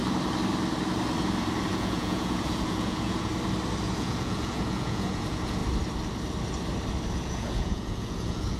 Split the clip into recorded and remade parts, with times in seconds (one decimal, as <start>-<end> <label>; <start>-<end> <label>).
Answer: 0.0-1.7 recorded; 1.7-3.3 remade; 3.3-3.9 recorded; 3.9-5.6 remade; 5.6-7.1 recorded; 7.1-8.6 remade